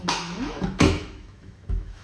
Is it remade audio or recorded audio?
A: remade